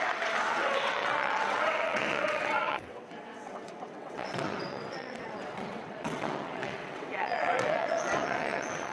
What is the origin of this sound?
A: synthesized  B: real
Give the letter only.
A